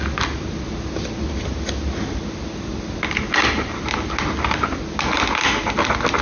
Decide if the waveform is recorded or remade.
recorded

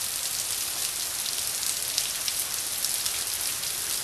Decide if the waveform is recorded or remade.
recorded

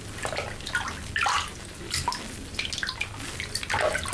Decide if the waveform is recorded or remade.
recorded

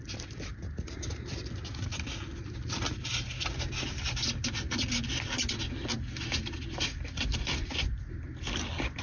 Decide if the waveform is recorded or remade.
recorded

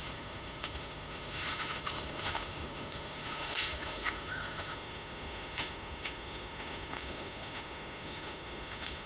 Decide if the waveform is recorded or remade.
remade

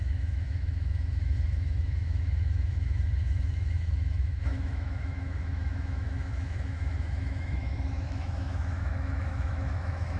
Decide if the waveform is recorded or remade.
remade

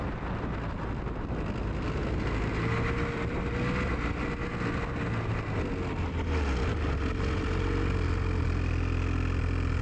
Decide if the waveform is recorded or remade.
recorded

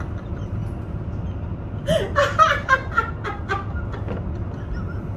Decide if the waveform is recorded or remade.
recorded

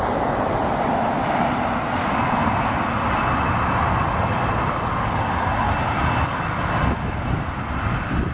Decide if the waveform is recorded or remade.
recorded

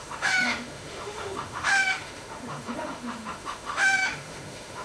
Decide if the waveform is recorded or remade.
remade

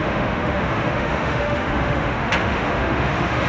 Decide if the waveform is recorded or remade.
remade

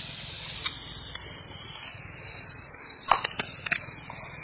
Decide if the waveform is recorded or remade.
recorded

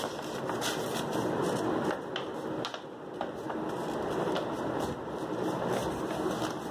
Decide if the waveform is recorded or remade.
recorded